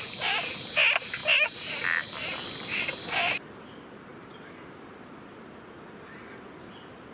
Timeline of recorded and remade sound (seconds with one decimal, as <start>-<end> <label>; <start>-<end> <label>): 0.0-7.1 recorded